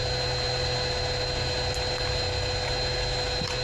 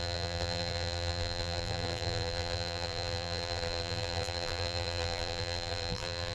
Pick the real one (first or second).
first